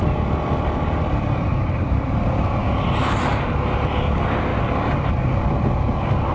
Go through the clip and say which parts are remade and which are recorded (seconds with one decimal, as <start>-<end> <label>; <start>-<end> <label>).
0.0-1.5 recorded; 1.5-2.2 remade; 2.2-6.3 recorded